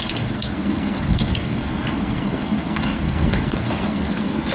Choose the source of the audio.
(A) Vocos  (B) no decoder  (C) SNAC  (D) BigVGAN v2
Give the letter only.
C